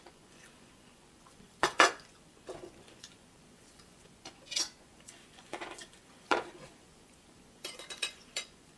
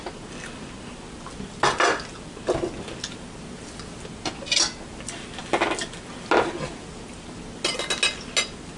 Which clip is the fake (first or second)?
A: first